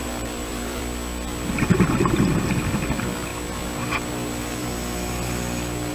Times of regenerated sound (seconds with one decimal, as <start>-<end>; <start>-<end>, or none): 0.0-0.8